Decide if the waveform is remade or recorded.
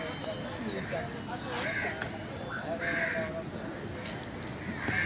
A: recorded